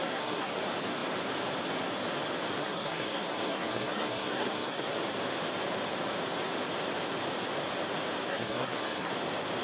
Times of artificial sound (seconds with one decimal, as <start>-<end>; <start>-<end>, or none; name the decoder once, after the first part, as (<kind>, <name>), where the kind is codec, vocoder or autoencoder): 0.0-0.6 (codec, SNAC); 2.5-5.0; 8.3-9.1